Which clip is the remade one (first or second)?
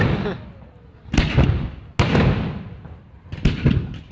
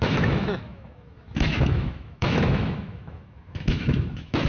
second